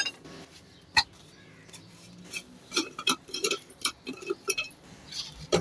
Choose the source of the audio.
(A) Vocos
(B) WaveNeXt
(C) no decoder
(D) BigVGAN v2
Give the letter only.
D